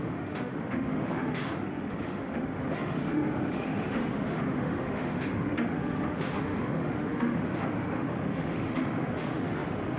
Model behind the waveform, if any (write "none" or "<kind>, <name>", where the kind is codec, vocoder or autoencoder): autoencoder, DAC-VAE